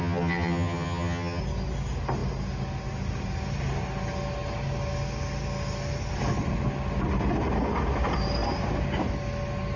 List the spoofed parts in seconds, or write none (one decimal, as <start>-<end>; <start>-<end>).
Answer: 0.0-1.4